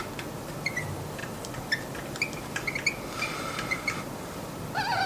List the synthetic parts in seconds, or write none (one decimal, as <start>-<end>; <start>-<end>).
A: none